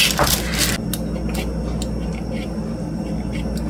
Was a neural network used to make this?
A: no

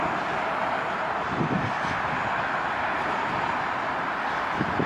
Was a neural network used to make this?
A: no